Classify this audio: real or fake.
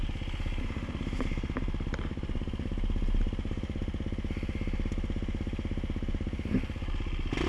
real